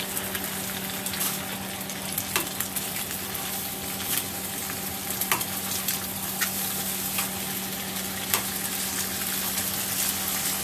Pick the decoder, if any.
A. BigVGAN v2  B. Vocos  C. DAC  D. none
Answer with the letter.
D